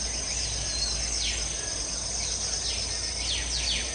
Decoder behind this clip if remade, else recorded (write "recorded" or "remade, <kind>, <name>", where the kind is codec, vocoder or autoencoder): recorded